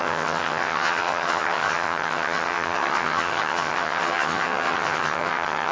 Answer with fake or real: fake